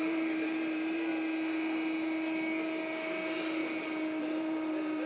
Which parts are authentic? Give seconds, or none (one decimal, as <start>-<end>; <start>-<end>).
1.1-4.2